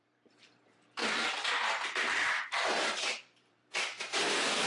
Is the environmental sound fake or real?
fake